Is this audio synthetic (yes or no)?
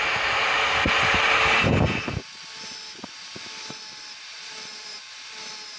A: no